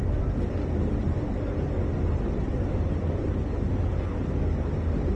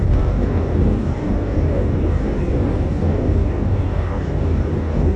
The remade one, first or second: second